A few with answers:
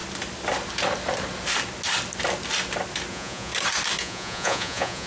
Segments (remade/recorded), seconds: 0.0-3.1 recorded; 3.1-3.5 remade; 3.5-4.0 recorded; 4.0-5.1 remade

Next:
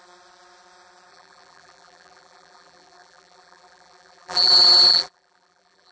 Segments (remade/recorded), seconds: 0.0-1.1 recorded; 1.1-4.5 remade; 4.5-4.9 recorded; 4.9-5.9 remade

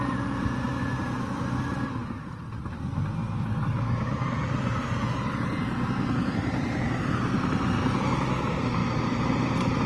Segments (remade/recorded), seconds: 0.0-2.0 recorded; 2.0-2.8 remade; 2.8-3.2 recorded; 3.2-7.8 remade; 7.8-9.9 recorded

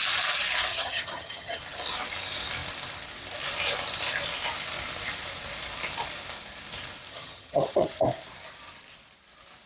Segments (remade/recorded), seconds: 0.0-0.7 recorded; 0.7-1.6 remade; 1.6-7.1 recorded; 7.1-7.9 remade; 7.9-9.7 recorded